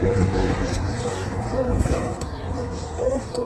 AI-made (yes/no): yes